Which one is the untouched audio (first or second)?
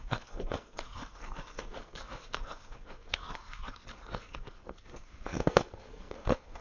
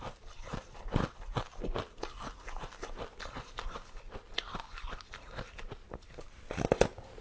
second